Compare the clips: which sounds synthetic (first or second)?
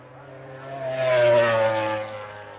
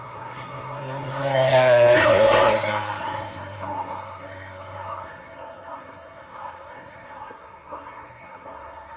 second